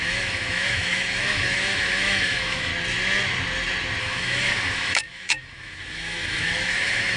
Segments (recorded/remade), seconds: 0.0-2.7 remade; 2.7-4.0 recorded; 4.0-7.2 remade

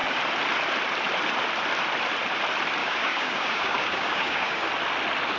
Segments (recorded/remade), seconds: 0.0-2.8 recorded; 2.8-4.7 remade; 4.7-5.4 recorded

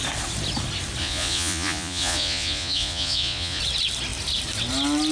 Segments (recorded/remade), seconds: 0.0-1.0 recorded; 1.0-3.6 remade; 3.6-5.1 recorded

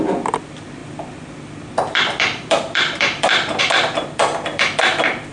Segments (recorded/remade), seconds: 0.0-5.3 remade

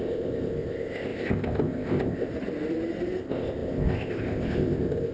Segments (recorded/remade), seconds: 0.0-2.3 remade; 2.3-3.2 recorded; 3.2-5.1 remade